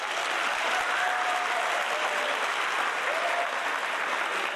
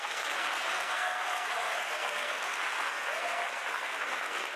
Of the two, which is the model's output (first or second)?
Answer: second